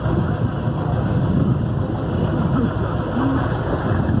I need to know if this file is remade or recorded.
recorded